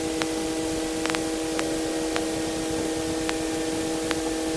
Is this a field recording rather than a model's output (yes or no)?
yes